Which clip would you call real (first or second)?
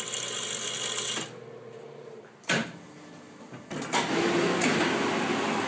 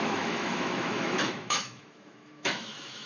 first